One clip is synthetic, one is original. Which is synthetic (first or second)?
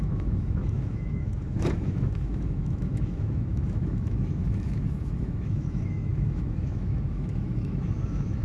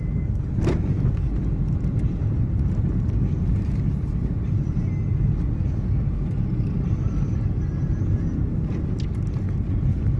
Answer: first